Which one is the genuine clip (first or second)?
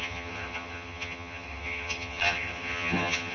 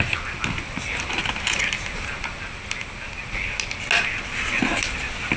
second